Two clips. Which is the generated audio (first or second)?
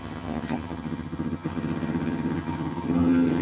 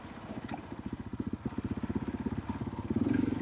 first